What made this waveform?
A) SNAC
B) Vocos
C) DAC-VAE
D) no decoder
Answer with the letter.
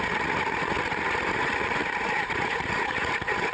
B